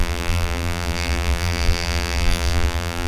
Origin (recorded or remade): remade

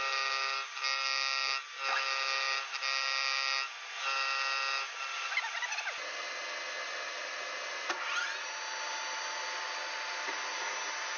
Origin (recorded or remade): recorded